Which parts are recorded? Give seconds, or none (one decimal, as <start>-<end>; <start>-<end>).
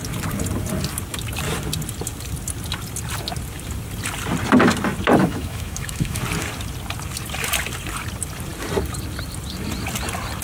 0.0-5.2; 6.2-10.4